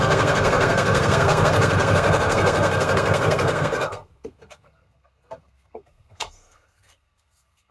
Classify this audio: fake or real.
fake